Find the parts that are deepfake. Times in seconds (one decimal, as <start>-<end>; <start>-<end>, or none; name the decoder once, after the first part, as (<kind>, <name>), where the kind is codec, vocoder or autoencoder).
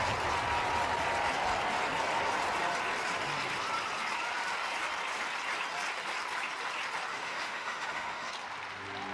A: 7.1-8.3 (autoencoder, DAC-VAE)